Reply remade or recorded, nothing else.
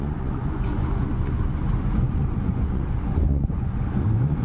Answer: remade